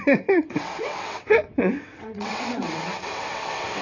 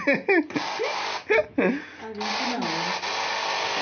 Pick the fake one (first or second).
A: first